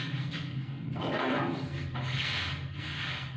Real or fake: fake